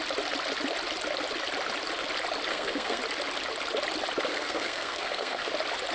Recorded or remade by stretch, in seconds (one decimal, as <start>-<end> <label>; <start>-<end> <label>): 0.0-2.5 recorded; 2.5-3.0 remade; 3.0-4.3 recorded; 4.3-5.5 remade; 5.5-5.9 recorded